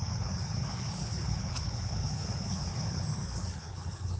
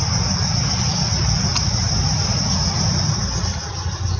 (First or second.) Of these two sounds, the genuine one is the second